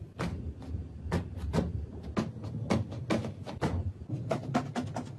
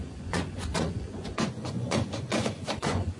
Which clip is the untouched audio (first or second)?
first